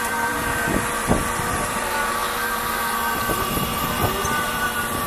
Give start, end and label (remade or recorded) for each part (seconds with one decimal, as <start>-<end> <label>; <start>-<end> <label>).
0.0-2.2 remade; 2.2-3.8 recorded; 3.8-5.1 remade